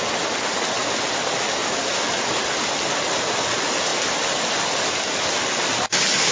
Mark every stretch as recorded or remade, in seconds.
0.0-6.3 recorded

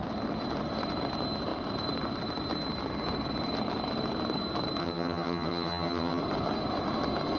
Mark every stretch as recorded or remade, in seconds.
0.0-4.8 recorded; 4.8-6.2 remade; 6.2-7.4 recorded